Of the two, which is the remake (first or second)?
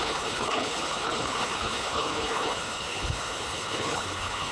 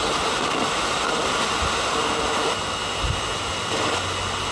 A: first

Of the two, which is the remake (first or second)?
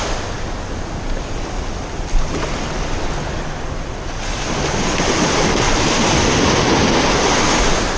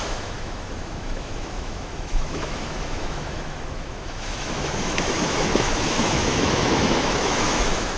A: second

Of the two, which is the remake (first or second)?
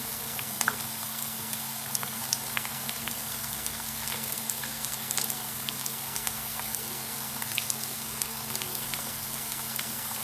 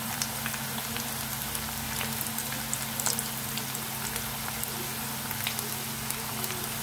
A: first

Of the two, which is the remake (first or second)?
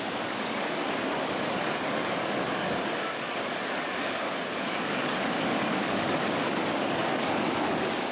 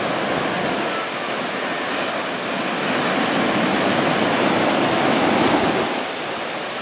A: first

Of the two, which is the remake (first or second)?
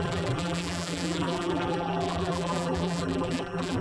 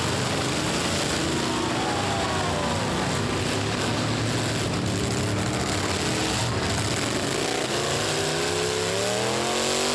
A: first